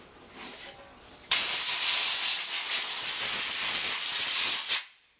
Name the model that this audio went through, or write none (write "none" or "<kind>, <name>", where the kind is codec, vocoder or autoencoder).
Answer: none